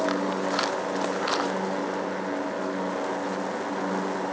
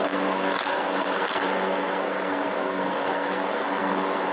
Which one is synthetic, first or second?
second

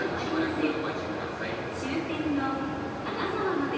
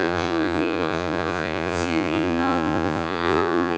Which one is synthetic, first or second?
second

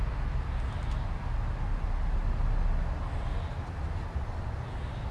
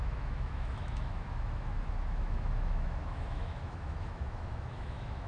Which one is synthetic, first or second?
second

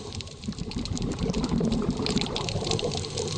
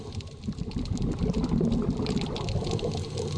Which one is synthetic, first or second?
first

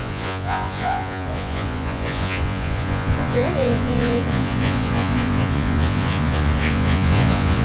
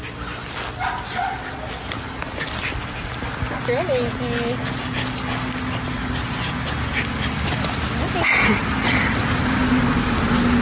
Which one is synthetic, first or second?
first